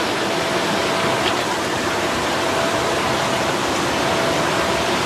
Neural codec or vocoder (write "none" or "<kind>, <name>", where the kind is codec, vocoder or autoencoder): none